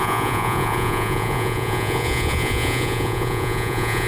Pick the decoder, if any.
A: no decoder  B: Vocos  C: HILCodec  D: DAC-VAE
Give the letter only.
B